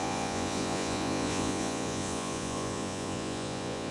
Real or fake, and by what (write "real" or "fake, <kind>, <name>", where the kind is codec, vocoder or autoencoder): fake, vocoder, Vocos